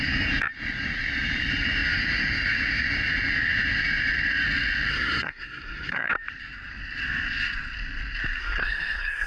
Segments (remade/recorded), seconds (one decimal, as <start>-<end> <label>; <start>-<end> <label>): 0.0-4.9 recorded; 4.9-6.1 remade; 6.1-8.4 recorded; 8.4-9.3 remade